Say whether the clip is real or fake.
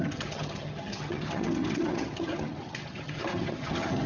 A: fake